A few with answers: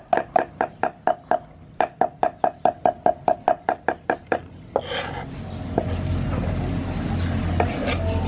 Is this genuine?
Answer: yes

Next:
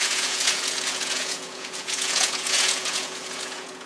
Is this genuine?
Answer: no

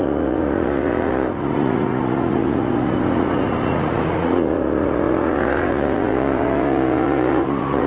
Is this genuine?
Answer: no